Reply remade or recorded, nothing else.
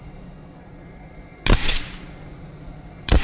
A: remade